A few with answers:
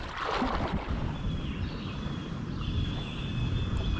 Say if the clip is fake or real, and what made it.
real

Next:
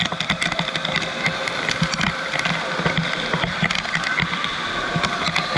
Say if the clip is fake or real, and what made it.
real